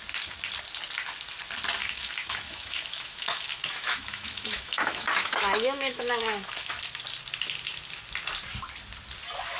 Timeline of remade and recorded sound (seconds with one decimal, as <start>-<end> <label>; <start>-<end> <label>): 0.0-1.8 recorded; 1.8-6.7 remade; 6.7-9.6 recorded